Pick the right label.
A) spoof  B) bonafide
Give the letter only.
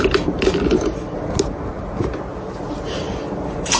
B